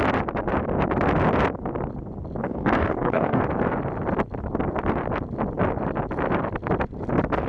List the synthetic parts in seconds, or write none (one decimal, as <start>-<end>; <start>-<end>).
2.4-3.4